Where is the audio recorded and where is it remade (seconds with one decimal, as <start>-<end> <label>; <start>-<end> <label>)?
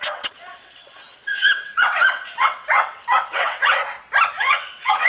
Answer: 0.0-3.8 remade; 3.8-4.4 recorded; 4.4-5.1 remade